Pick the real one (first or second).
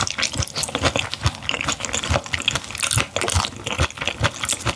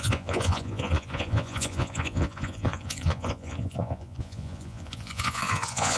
first